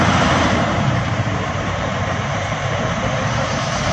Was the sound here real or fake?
fake